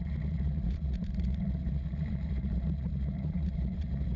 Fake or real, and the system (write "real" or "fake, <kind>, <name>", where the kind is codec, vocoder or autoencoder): fake, vocoder, Vocos